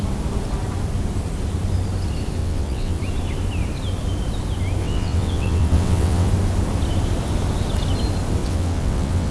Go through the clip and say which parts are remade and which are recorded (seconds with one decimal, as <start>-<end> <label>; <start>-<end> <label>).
0.0-2.4 recorded; 2.4-3.0 remade; 3.0-4.8 recorded; 4.8-6.3 remade; 6.3-8.4 recorded; 8.4-9.3 remade